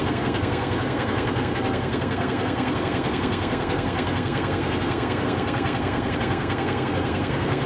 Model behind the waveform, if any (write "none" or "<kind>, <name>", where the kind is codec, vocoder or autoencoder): codec, SNAC